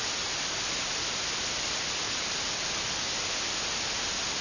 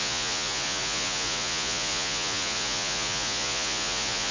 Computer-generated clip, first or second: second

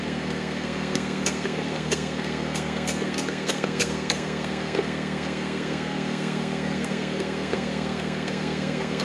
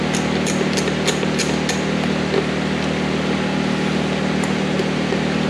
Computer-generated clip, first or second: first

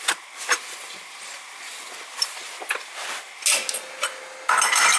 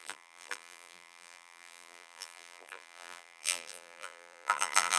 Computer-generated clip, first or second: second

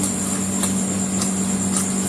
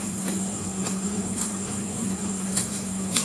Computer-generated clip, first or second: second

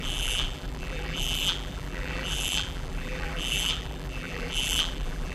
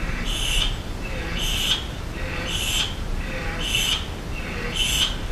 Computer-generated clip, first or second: first